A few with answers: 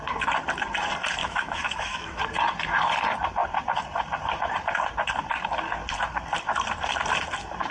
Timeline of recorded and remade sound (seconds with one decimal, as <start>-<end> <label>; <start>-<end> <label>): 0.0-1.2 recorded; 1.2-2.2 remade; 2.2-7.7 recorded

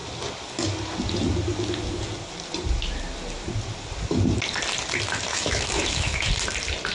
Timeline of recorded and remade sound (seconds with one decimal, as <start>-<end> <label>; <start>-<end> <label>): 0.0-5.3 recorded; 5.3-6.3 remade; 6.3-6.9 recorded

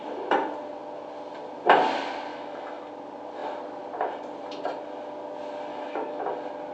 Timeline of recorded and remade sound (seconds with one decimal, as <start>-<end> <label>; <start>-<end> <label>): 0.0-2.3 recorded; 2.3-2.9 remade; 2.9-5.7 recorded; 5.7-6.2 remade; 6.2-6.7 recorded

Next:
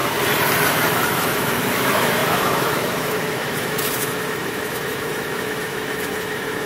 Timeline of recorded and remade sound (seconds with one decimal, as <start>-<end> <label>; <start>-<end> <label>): 0.0-0.7 recorded; 0.7-6.7 remade